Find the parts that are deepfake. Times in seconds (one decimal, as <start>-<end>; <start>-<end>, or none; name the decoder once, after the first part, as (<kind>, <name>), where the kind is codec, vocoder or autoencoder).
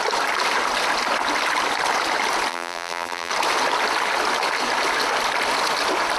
2.5-3.3 (vocoder, BigVGAN v2)